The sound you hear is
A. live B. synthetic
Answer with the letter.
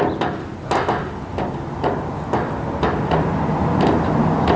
A